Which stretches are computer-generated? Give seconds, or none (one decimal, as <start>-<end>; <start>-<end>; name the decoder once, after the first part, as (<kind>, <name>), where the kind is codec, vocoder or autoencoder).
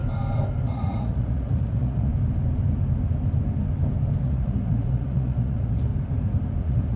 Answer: 0.6-2.1 (vocoder, Vocos); 4.2-5.9; 6.6-7.0